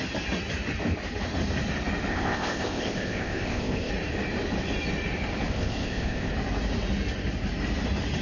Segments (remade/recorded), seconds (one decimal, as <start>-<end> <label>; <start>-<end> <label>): 0.0-2.1 recorded; 2.1-3.9 remade; 3.9-5.5 recorded; 5.5-6.3 remade; 6.3-8.2 recorded